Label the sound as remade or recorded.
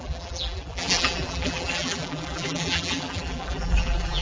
remade